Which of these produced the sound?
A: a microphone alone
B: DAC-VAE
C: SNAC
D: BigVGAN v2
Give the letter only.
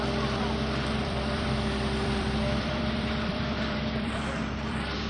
D